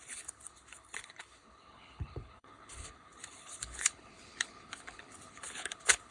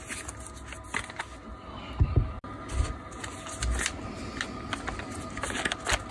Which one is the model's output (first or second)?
first